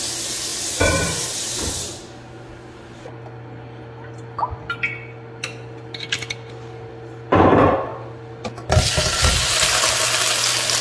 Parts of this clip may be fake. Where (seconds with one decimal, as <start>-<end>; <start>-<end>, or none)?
none